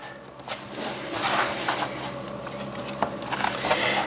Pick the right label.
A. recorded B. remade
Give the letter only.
A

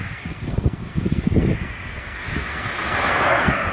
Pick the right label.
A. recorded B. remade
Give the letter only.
B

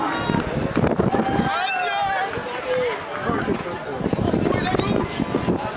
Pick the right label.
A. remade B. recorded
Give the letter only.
B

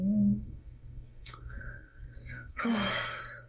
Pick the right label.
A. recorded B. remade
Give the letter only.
B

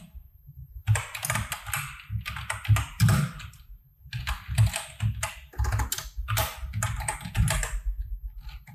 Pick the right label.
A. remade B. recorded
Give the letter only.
B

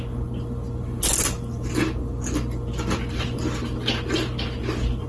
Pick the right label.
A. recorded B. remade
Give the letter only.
A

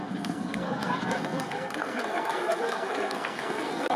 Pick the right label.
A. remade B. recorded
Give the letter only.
A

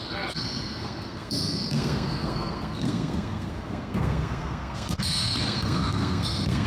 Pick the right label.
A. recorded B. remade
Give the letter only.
B